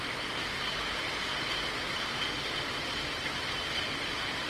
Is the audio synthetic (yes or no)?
no